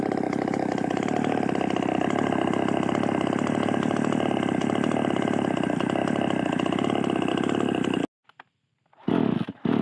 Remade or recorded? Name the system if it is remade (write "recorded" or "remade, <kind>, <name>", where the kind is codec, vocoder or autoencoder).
recorded